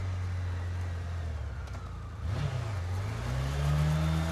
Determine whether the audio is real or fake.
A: real